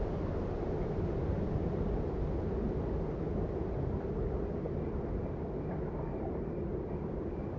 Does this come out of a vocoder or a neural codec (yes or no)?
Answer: no